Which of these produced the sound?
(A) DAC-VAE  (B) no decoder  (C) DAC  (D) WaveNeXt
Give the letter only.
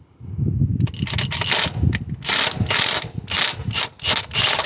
B